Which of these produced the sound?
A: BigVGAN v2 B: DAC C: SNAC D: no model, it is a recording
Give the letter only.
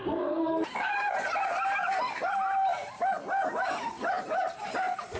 A